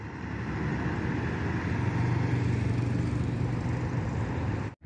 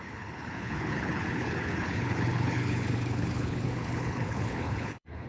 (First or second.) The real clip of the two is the first